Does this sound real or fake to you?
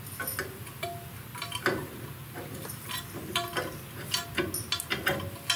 real